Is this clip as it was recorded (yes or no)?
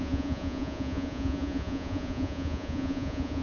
no